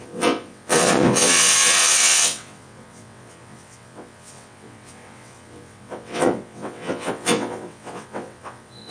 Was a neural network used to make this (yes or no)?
yes